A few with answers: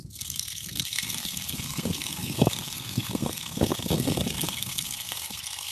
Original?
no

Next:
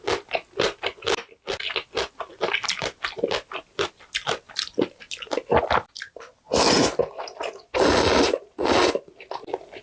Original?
yes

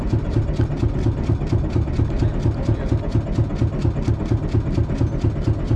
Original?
yes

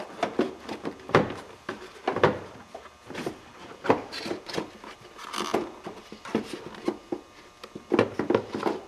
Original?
yes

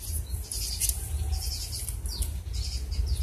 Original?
yes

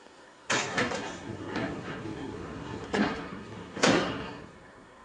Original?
no